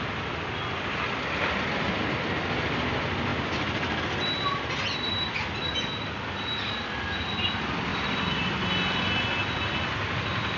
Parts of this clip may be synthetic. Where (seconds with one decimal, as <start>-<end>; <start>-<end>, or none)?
none